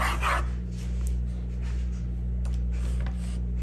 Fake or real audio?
real